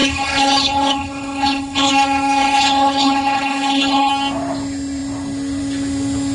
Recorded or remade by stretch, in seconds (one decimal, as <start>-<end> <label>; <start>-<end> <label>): 0.0-1.9 remade; 1.9-2.4 recorded; 2.4-4.1 remade; 4.1-6.3 recorded